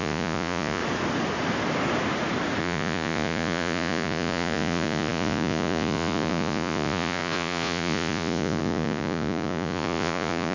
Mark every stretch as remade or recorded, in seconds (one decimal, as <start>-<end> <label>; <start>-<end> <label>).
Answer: 0.0-0.8 remade; 0.8-2.6 recorded; 2.6-10.5 remade